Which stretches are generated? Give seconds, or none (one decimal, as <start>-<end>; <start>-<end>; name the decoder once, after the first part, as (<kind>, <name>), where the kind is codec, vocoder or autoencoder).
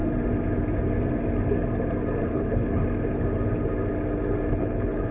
2.2-2.8 (codec, HILCodec); 4.5-5.1